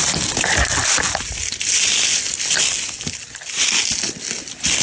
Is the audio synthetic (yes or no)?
no